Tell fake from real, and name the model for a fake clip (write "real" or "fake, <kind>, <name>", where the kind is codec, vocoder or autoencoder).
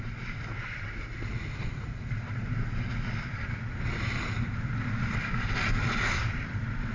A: real